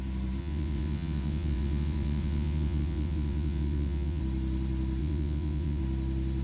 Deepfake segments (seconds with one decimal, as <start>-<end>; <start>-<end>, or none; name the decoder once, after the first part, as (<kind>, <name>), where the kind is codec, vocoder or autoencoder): 0.4-4.2 (vocoder, WaveNeXt); 5.0-5.8